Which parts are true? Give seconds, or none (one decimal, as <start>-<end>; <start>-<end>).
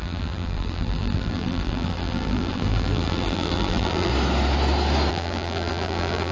4.1-5.1